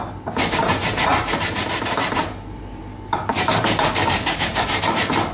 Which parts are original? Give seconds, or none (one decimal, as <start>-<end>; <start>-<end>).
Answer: 0.0-2.9; 4.8-5.3